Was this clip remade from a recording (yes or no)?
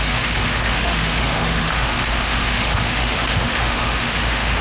yes